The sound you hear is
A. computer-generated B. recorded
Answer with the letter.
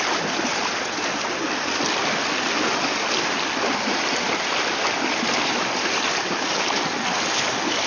B